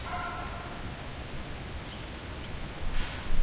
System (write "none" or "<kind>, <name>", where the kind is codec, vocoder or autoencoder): none